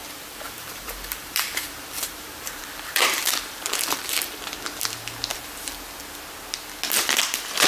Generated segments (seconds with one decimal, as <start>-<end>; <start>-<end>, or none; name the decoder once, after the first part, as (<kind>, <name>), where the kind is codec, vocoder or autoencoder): 0.0-4.4 (vocoder, BigVGAN v2); 5.3-6.0